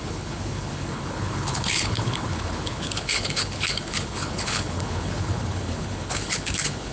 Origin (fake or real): fake